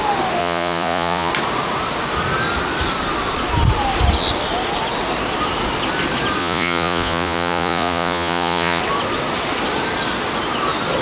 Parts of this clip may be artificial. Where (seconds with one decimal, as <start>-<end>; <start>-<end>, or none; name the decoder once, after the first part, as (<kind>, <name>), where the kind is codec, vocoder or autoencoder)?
0.4-1.3 (vocoder, Vocos); 6.4-8.8